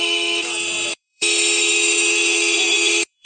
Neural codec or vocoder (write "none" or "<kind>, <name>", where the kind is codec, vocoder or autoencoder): autoencoder, DAC-VAE